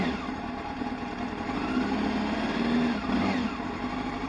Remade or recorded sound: recorded